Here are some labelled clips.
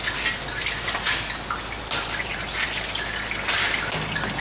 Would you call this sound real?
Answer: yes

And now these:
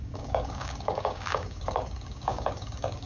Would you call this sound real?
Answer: no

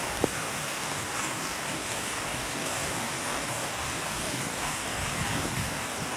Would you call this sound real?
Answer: no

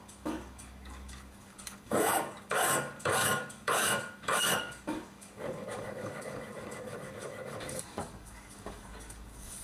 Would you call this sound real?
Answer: no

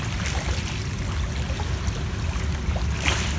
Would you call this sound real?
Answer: yes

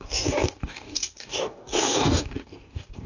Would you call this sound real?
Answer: no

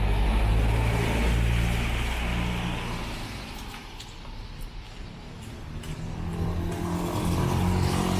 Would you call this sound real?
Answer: yes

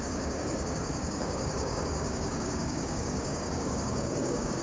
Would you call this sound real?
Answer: no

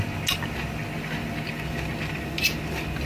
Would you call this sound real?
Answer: yes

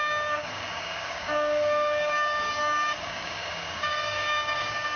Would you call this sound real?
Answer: no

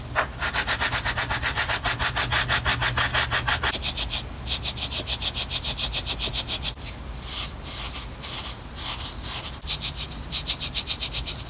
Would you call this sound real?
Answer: yes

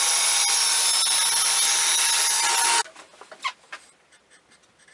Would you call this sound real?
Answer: yes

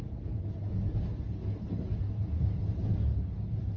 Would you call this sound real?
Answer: yes